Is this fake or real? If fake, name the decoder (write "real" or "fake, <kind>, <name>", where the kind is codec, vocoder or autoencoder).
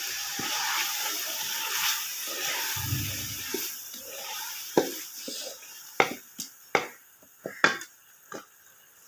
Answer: real